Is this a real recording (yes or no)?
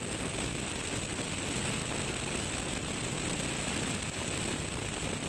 yes